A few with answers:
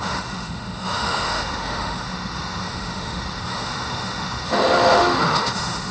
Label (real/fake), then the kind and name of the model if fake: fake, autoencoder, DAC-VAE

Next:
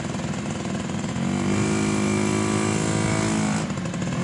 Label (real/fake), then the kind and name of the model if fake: real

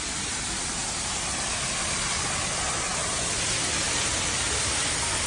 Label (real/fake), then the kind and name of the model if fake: real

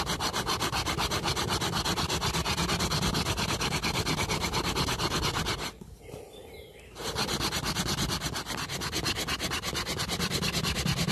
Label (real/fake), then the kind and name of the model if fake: real